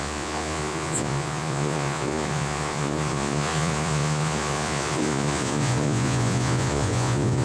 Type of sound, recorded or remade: remade